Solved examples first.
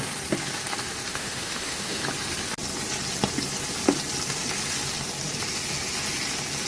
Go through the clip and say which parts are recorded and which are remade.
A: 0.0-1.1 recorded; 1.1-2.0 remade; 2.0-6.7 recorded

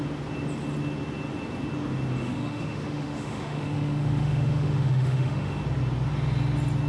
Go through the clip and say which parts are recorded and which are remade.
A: 0.0-2.2 recorded; 2.2-5.6 remade; 5.6-6.9 recorded

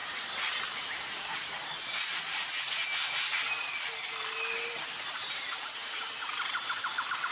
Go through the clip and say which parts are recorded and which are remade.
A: 0.0-7.3 recorded

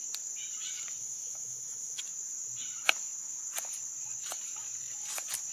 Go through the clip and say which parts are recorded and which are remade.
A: 0.0-1.0 recorded; 1.0-2.0 remade; 2.0-5.5 recorded